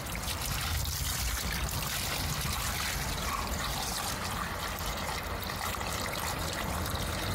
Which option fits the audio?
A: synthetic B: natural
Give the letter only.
B